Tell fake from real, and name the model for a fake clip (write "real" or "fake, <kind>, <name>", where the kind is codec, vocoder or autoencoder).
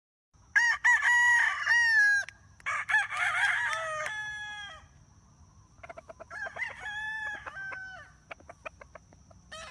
real